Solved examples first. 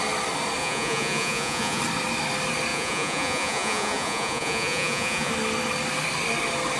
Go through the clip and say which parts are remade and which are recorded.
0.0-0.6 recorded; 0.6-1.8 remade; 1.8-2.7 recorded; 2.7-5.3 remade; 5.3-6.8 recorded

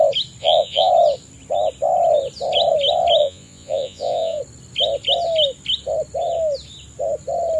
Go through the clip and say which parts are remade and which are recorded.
0.0-0.4 recorded; 0.4-0.9 remade; 0.9-3.2 recorded; 3.2-4.4 remade; 4.4-7.6 recorded

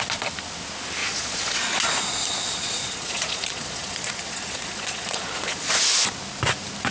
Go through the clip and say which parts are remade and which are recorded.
0.0-1.0 recorded; 1.0-1.6 remade; 1.6-2.2 recorded; 2.2-5.7 remade; 5.7-6.9 recorded

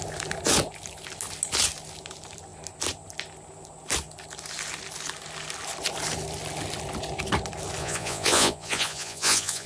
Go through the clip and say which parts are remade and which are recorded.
0.0-7.8 recorded; 7.8-9.7 remade

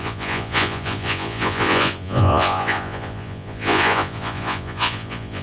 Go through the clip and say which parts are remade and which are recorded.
0.0-5.4 remade

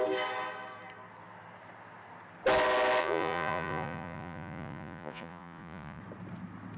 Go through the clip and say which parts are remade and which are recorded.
0.0-3.0 recorded; 3.0-6.0 remade; 6.0-6.8 recorded

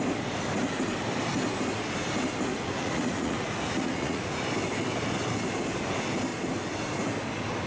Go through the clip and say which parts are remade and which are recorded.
0.0-2.5 recorded; 2.5-4.4 remade; 4.4-7.7 recorded

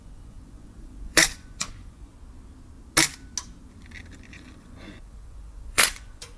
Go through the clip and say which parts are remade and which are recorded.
0.0-2.1 remade; 2.1-4.3 recorded; 4.3-6.4 remade